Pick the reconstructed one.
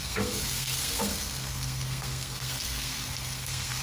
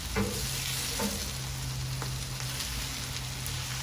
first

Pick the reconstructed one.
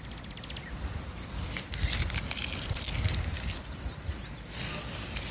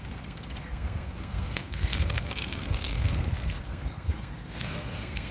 second